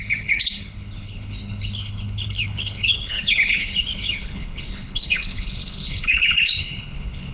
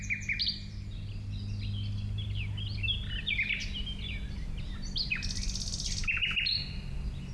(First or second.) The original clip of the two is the second